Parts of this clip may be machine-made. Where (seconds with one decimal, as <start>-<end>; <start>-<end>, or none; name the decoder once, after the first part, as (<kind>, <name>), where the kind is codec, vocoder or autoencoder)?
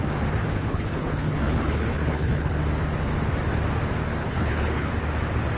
0.4-2.5 (codec, HILCodec); 4.2-4.9